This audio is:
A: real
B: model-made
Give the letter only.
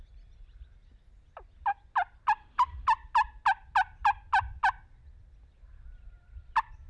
A